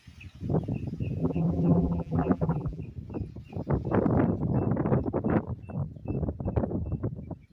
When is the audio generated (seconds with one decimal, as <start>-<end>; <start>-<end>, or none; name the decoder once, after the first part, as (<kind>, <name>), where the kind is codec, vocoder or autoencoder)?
1.2-2.8 (vocoder, BigVGAN v2)